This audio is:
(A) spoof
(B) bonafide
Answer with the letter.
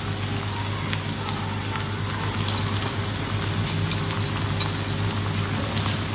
B